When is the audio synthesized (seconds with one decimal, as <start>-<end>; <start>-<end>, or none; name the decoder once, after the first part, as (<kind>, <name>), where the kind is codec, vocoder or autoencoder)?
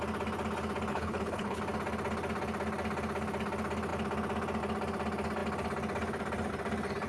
0.9-1.6 (codec, HILCodec)